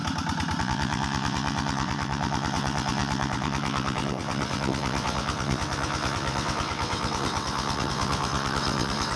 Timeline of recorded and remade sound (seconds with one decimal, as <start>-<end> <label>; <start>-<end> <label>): 0.0-0.6 recorded; 0.6-9.2 remade